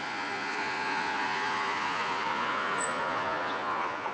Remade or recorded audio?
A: remade